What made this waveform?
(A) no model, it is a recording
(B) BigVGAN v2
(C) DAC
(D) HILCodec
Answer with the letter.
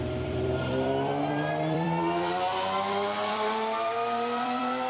B